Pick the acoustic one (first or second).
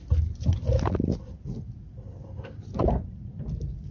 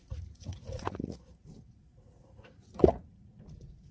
first